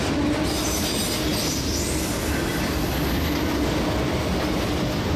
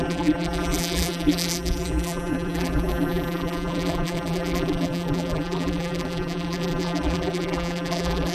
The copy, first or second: second